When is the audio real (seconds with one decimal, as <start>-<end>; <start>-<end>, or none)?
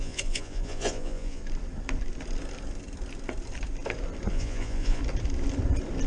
1.4-4.3; 5.0-6.1